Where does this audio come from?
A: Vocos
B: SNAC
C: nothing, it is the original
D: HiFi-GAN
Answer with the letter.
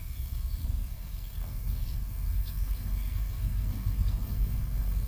B